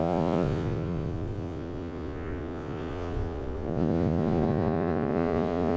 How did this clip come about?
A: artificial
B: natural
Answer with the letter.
A